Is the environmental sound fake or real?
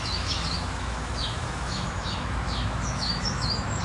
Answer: fake